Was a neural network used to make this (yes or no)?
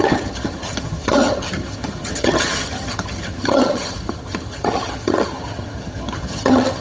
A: yes